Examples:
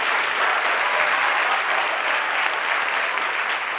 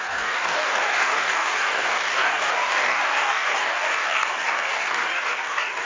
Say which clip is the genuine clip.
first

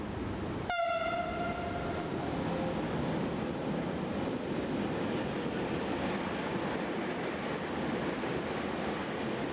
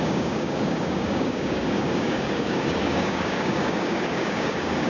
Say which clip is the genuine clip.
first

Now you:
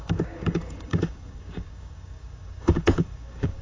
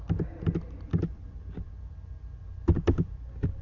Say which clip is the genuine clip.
second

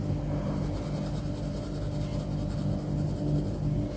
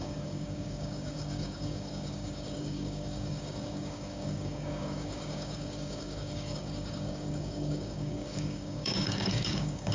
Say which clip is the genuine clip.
first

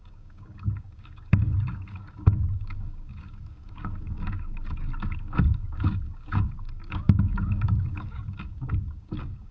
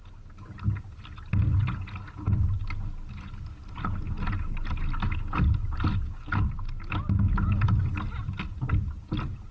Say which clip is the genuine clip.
second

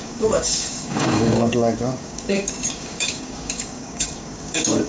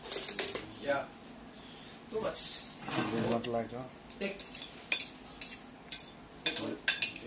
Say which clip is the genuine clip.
second